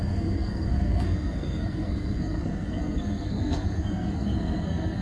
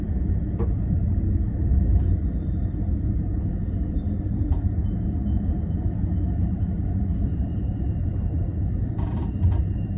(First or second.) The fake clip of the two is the first